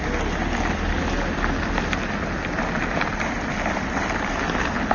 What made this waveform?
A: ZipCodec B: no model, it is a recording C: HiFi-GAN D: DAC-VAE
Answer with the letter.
B